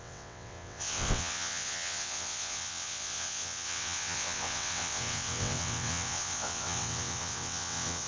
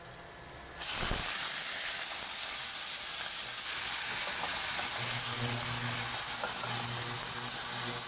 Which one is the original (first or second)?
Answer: second